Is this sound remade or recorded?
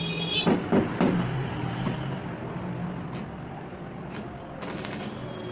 recorded